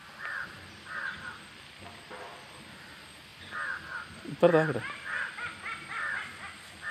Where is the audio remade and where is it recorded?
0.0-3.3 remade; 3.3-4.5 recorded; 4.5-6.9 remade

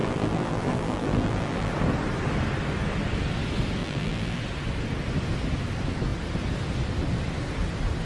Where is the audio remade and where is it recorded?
0.0-1.7 remade; 1.7-3.8 recorded; 3.8-4.4 remade; 4.4-8.1 recorded

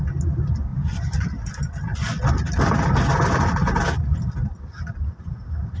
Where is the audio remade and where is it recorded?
0.0-5.0 recorded; 5.0-5.8 remade

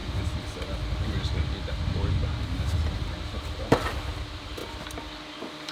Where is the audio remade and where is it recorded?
0.0-2.2 remade; 2.2-2.9 recorded; 2.9-4.6 remade; 4.6-5.7 recorded

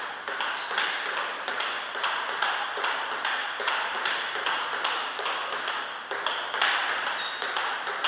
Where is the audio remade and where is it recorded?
0.0-1.3 recorded; 1.3-5.3 remade; 5.3-7.0 recorded; 7.0-7.5 remade; 7.5-8.1 recorded

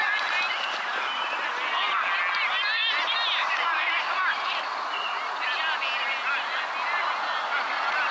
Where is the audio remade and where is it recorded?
0.0-2.8 recorded; 2.8-4.7 remade; 4.7-8.1 recorded

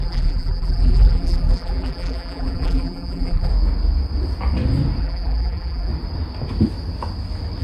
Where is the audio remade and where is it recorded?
0.0-3.5 remade; 3.5-5.0 recorded; 5.0-5.9 remade; 5.9-7.6 recorded